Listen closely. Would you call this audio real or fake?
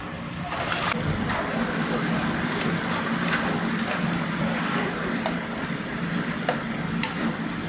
real